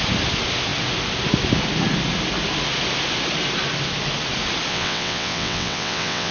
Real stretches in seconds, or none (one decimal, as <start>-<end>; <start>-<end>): 0.0-4.7